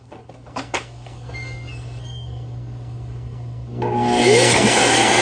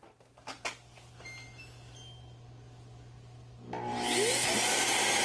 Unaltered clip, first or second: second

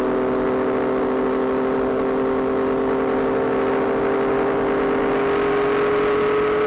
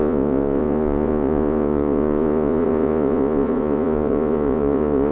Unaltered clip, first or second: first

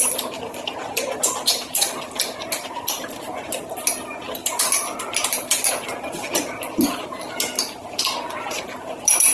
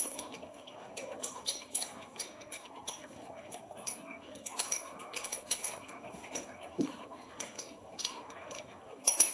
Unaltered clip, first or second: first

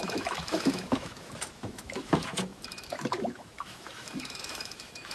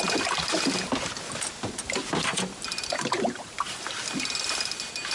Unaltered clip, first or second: second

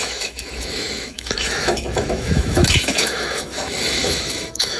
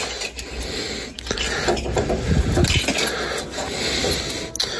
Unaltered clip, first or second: second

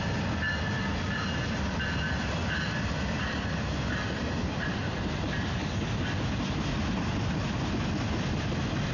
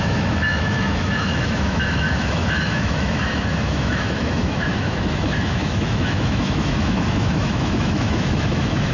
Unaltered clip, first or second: first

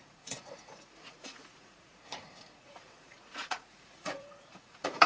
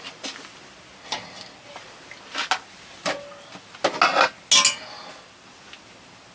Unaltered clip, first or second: second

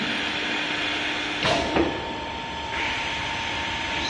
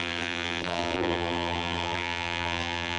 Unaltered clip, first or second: first